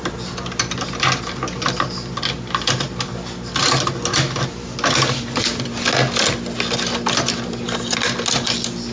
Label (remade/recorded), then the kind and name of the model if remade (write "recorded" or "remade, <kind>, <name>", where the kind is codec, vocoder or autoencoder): recorded